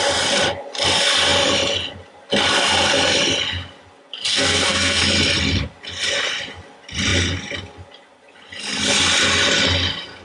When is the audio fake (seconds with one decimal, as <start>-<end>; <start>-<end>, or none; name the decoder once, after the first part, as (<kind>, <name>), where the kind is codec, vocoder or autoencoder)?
4.3-5.0 (codec, SNAC)